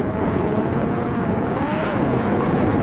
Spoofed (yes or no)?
yes